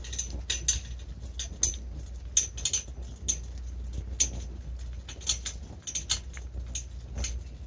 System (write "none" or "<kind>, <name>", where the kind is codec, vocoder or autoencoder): none